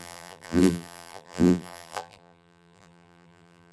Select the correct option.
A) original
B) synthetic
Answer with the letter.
B